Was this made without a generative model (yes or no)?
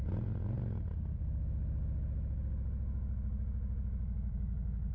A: yes